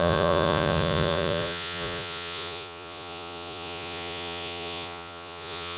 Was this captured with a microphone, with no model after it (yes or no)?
no